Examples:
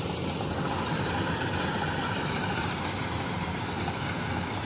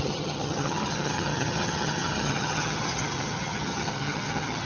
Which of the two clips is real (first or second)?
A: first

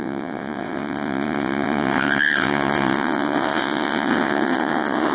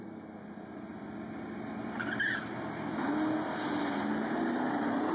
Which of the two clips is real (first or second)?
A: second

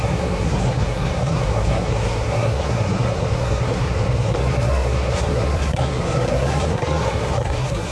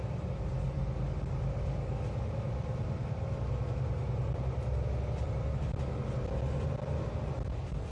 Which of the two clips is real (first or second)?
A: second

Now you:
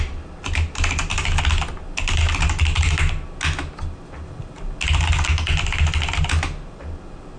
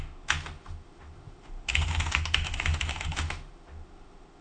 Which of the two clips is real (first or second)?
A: first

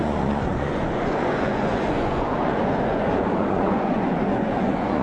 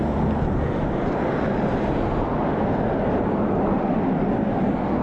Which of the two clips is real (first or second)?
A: second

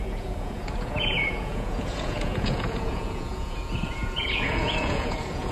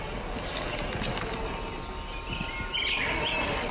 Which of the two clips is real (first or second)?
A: second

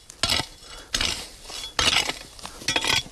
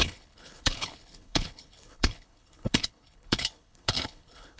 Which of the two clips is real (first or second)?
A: first